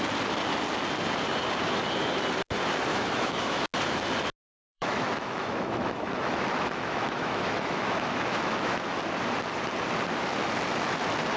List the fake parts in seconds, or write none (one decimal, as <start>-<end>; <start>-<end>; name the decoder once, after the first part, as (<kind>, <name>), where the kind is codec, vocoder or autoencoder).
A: 2.9-3.6 (autoencoder, DAC-VAE); 4.5-9.0